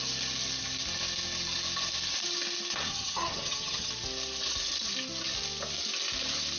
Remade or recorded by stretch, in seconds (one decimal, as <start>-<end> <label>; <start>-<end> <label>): 0.0-2.9 recorded; 2.9-3.9 remade; 3.9-6.6 recorded